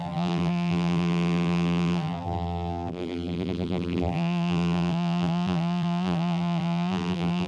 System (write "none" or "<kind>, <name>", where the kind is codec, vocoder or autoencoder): vocoder, BigVGAN v2